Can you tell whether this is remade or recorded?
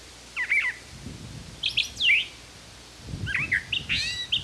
recorded